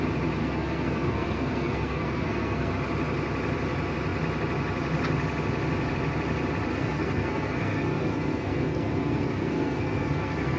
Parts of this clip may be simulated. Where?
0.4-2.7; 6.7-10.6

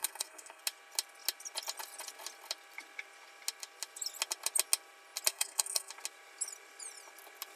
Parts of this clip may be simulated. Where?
0.0-0.6; 5.3-5.9

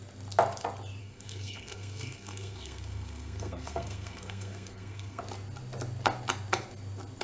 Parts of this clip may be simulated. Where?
1.0-5.2

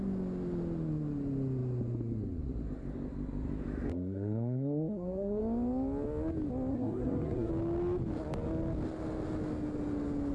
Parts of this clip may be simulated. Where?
3.9-5.4; 6.7-7.5